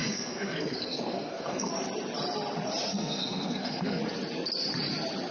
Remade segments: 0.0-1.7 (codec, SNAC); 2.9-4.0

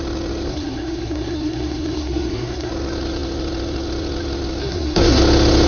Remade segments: 0.5-2.7 (codec, SNAC); 4.6-5.2

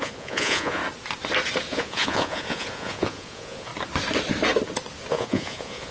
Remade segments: 0.0-0.8 (vocoder, Vocos); 1.7-3.7; 5.1-5.9